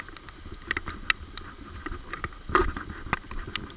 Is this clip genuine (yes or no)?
yes